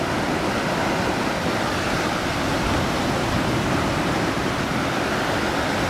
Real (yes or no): yes